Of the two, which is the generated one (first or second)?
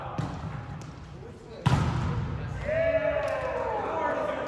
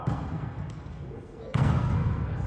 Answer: second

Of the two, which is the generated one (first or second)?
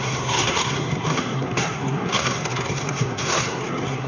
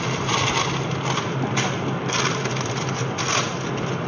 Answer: first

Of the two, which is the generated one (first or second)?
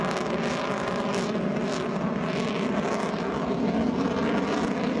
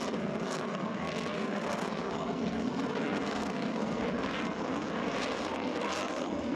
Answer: second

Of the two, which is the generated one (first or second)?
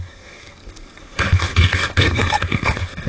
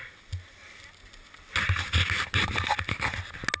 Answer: first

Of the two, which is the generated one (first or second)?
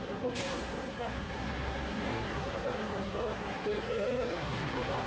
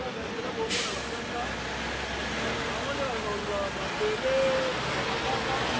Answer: first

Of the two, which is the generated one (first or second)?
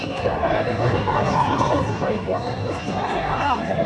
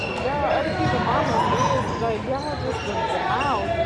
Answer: first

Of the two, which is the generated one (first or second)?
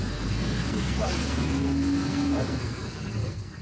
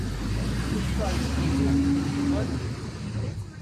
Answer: first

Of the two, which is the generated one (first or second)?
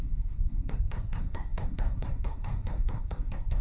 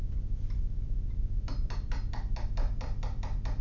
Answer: first